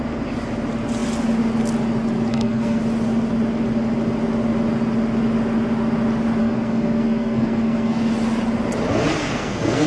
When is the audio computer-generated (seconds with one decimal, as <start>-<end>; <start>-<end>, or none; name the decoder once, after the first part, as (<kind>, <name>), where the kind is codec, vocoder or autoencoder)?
2.3-2.8 (codec, SNAC); 6.4-8.0; 9.2-9.9